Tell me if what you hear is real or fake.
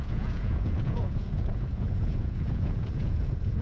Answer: fake